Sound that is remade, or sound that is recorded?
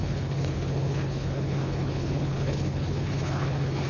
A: remade